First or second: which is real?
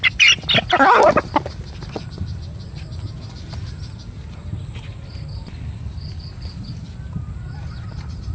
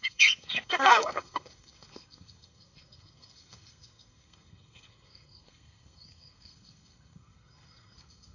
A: first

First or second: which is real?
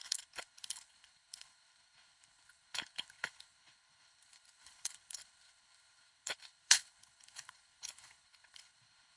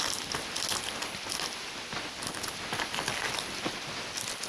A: second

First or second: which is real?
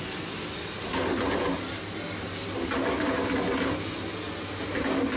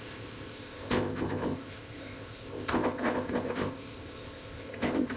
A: first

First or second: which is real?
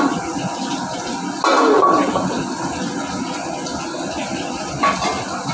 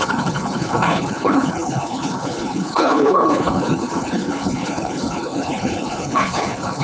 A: first